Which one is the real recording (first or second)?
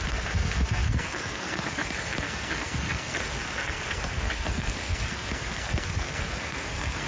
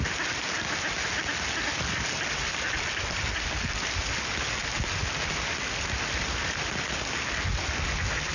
second